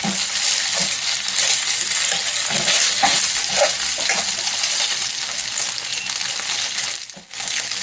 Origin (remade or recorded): recorded